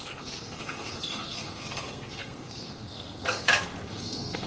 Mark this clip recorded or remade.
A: remade